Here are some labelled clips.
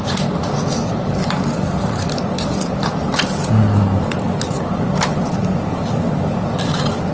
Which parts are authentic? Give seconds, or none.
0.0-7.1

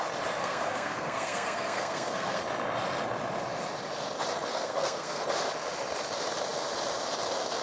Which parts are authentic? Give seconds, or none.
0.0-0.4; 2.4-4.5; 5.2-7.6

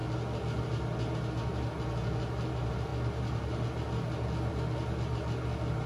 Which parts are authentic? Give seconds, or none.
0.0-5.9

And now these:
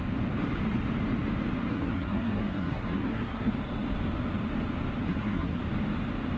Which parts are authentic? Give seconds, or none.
0.0-1.6; 3.5-5.1; 5.6-6.4

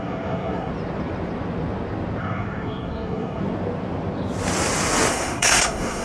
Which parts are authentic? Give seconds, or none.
0.7-2.2; 3.4-5.1